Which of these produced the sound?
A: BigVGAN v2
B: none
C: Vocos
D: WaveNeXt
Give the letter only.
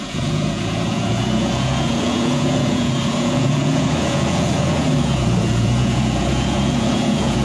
C